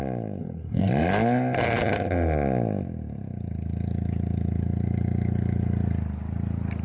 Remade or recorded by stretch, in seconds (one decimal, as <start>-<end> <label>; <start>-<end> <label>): 0.0-0.4 recorded; 0.4-0.9 remade; 0.9-6.8 recorded